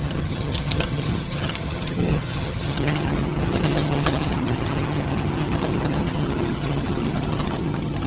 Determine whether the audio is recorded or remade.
remade